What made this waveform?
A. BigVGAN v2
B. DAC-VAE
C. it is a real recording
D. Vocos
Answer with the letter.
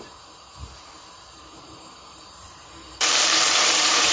A